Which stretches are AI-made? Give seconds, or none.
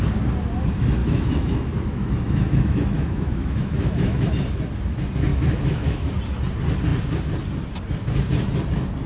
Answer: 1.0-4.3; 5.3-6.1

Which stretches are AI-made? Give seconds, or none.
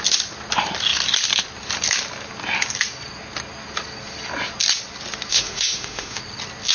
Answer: 5.3-6.2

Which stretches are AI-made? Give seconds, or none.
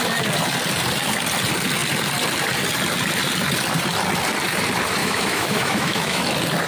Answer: 5.0-6.2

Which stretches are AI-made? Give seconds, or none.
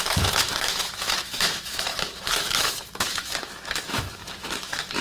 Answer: 0.0-5.0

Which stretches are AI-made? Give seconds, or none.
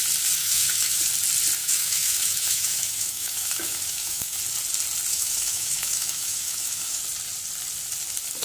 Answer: 0.4-1.0; 1.6-4.4; 5.1-7.0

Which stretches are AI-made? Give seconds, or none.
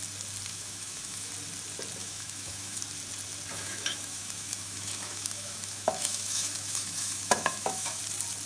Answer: 0.5-1.3; 2.0-2.8; 3.5-8.0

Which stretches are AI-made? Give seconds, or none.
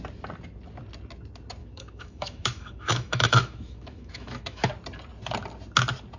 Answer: 1.6-4.7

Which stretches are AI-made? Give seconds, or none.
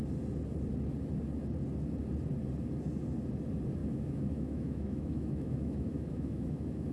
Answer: 3.8-6.9